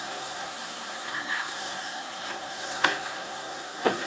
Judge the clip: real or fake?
fake